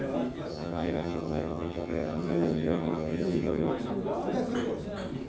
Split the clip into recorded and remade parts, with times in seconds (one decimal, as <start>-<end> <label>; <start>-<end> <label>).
0.0-0.5 recorded; 0.5-3.7 remade; 3.7-5.3 recorded